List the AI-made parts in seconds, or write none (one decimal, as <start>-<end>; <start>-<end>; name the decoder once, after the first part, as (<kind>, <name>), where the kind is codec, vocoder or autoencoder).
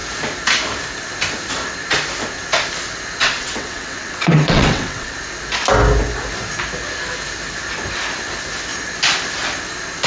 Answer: 3.2-5.2 (vocoder, WaveNeXt)